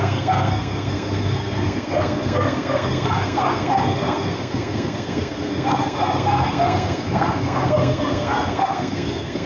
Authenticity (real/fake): fake